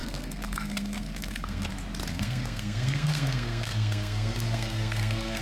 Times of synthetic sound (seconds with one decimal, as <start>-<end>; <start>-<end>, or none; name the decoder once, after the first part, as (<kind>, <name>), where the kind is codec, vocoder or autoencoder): 0.0-1.7 (codec, SNAC); 2.1-5.4